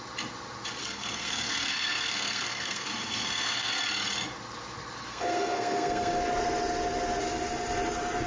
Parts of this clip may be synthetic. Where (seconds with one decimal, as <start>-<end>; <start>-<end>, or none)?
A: 0.8-3.7; 5.1-6.2